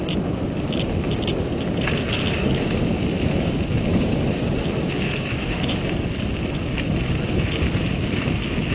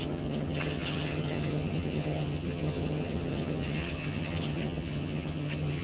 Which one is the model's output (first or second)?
second